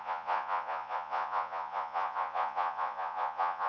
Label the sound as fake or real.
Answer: fake